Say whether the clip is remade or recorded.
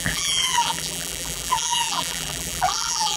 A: remade